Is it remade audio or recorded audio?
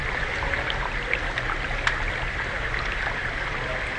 recorded